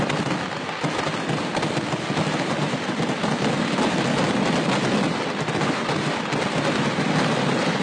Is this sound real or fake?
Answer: fake